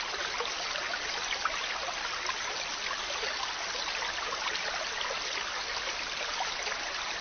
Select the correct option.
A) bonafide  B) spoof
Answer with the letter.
A